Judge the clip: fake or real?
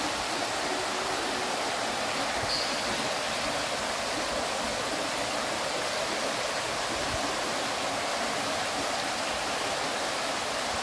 real